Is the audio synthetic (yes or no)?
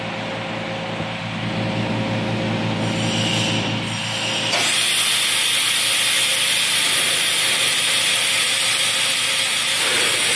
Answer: no